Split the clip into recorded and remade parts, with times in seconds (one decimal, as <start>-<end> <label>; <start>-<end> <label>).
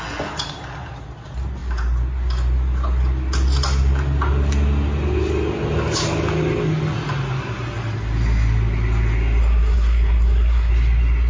0.0-9.4 recorded; 9.4-10.7 remade; 10.7-11.3 recorded